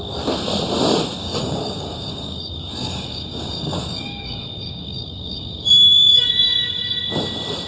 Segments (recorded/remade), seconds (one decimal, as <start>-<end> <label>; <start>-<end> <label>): 0.0-1.2 recorded; 1.2-5.7 remade; 5.7-7.7 recorded